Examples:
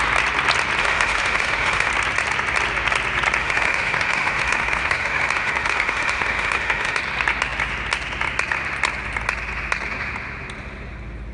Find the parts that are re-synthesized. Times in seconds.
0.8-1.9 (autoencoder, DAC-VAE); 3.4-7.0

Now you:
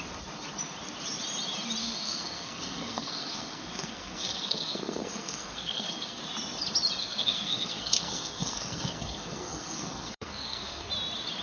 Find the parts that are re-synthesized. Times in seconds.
1.8-6.2 (codec, SNAC); 7.0-10.9

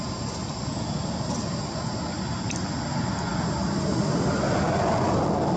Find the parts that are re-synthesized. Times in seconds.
none